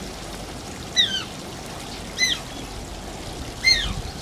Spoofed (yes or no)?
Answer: no